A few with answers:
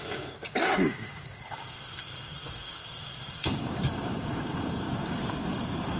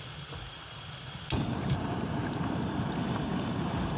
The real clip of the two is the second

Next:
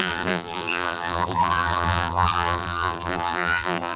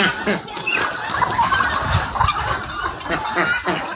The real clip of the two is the second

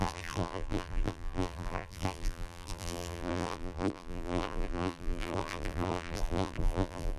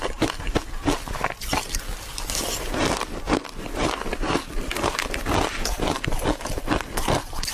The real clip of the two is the second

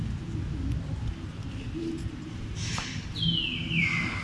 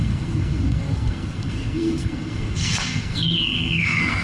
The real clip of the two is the first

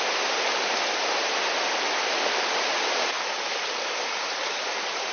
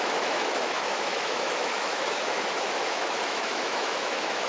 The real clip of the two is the first